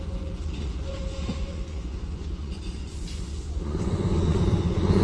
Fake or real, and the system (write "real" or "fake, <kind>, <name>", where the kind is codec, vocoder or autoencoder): fake, vocoder, Vocos